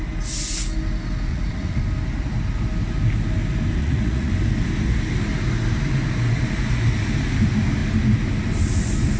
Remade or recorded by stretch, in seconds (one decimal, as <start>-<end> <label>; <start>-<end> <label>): 0.0-1.3 recorded; 1.3-1.8 remade; 1.8-3.8 recorded; 3.8-4.3 remade; 4.3-9.2 recorded